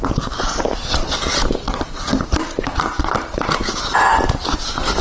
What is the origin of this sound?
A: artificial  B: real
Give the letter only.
B